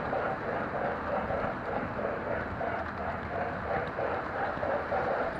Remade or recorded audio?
remade